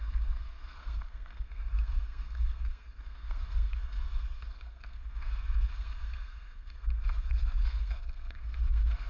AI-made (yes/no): yes